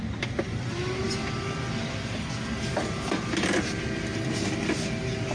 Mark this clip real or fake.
real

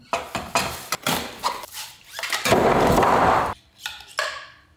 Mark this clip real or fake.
fake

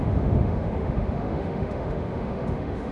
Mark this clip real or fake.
fake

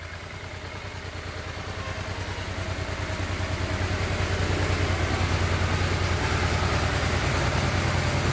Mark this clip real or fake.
real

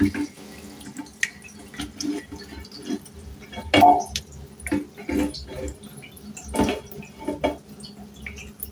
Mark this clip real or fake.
real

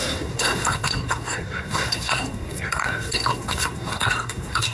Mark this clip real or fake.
fake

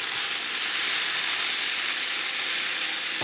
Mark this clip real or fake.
real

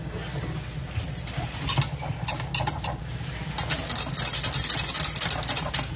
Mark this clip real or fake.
real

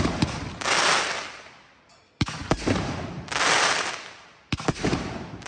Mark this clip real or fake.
real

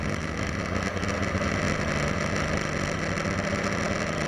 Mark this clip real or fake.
real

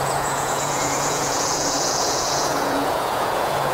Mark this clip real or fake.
fake